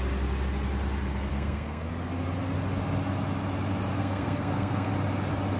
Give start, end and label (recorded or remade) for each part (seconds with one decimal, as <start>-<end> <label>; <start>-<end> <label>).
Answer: 0.0-1.3 recorded; 1.3-1.9 remade; 1.9-3.9 recorded; 3.9-4.9 remade; 4.9-5.6 recorded